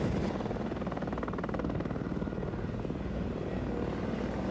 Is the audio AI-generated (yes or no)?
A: no